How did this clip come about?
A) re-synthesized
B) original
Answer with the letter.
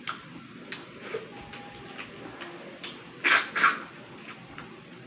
B